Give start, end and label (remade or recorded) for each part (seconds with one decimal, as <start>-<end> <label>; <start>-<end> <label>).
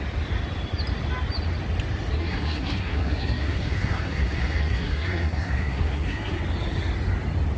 0.0-2.2 recorded; 2.2-6.4 remade; 6.4-7.6 recorded